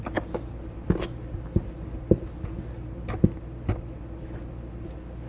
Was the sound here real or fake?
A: real